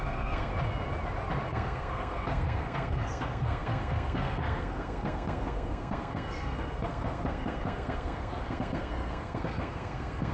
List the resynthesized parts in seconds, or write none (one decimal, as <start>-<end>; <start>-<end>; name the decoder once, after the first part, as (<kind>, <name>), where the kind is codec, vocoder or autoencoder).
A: 0.0-0.5 (codec, SNAC); 1.5-10.3